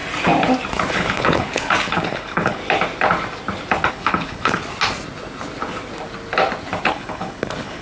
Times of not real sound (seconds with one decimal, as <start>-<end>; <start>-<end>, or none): 0.9-2.6; 3.9-4.6; 6.9-7.8